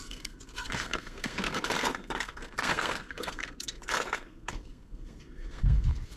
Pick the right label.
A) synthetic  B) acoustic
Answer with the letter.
A